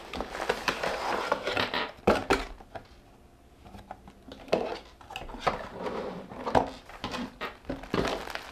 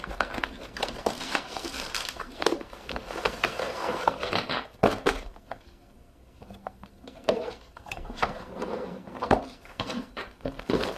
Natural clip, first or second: first